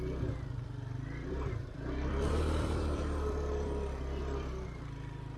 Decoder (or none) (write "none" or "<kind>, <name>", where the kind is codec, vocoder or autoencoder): vocoder, BigVGAN v2